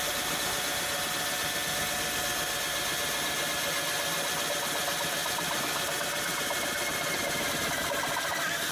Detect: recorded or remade recorded